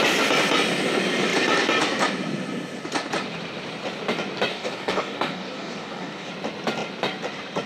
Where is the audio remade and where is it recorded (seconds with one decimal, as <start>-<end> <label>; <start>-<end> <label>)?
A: 0.0-4.5 recorded; 4.5-6.3 remade; 6.3-7.7 recorded